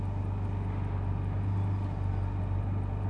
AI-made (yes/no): no